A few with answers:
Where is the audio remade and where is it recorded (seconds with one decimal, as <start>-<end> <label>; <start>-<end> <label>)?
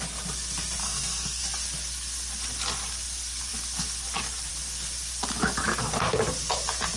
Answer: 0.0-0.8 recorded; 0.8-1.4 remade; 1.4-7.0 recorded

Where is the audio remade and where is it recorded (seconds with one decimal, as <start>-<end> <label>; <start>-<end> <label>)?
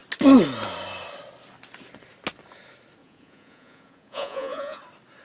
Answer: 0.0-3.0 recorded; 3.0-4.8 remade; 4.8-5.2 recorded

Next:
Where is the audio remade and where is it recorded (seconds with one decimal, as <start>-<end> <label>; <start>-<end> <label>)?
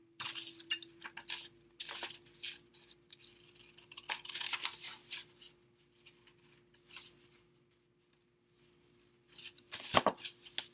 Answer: 0.0-10.7 recorded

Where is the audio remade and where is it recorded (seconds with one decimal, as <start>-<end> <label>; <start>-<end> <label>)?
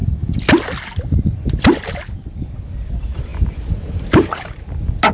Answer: 0.0-5.1 recorded